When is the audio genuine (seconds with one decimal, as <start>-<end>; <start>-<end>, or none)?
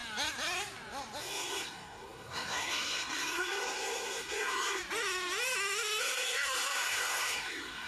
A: 0.0-1.2; 4.8-6.0